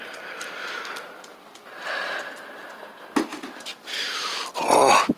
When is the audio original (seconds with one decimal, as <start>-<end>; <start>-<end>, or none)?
0.0-1.3; 2.2-5.2